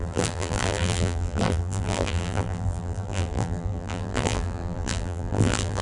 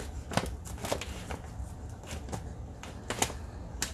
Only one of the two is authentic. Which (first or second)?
second